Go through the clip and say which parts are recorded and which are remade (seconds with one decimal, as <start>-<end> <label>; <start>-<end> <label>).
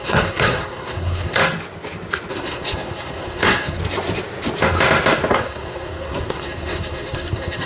0.0-1.4 remade; 1.4-2.3 recorded; 2.3-3.8 remade; 3.8-5.3 recorded; 5.3-7.7 remade